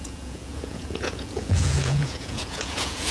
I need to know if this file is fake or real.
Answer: fake